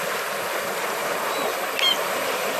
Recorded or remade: recorded